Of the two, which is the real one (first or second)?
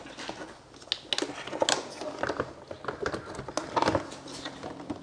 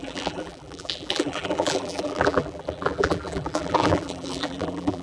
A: first